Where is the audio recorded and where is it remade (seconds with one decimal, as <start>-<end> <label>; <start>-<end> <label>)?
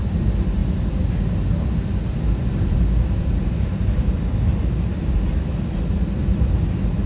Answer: 0.0-7.1 recorded